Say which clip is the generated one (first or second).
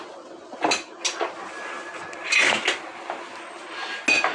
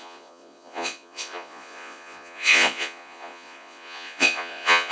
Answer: second